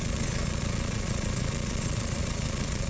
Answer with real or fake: fake